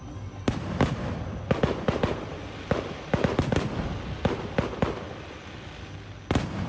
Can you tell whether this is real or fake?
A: real